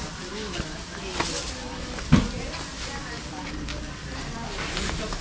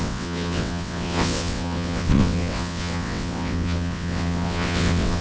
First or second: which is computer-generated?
second